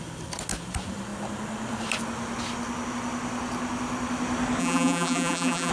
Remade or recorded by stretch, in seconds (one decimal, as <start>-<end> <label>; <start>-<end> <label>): 0.0-4.6 recorded; 4.6-5.7 remade